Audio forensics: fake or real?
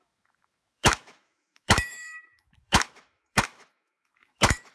fake